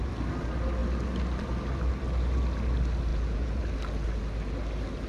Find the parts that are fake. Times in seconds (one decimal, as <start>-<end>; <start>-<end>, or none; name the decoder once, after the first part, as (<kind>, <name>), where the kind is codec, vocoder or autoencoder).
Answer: 3.1-3.6 (vocoder, Vocos)